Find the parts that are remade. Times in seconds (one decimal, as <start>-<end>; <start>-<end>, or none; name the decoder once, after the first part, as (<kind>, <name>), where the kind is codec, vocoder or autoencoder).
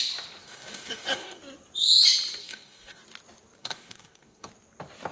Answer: 0.4-1.4 (codec, DAC); 2.4-3.0; 3.6-4.5